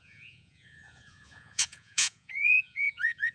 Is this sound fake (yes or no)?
yes